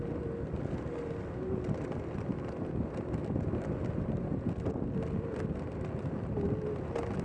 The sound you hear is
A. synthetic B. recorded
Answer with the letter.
B